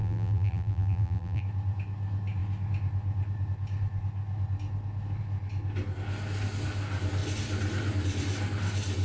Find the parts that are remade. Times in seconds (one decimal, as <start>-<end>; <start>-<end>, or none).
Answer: 0.0-1.4

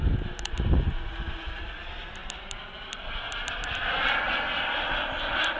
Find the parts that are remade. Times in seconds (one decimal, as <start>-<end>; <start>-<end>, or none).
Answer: none

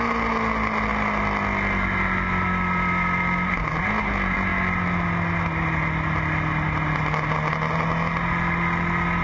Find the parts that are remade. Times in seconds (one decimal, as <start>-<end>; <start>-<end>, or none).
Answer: none

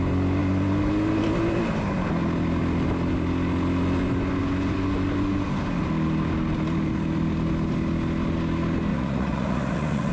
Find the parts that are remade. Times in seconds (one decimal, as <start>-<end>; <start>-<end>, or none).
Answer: 8.9-10.1